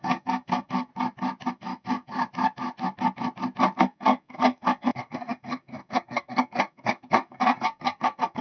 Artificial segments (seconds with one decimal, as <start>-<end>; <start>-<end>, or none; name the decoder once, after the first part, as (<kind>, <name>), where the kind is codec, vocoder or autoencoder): 0.0-0.9 (codec, SNAC); 1.5-2.2; 3.8-8.4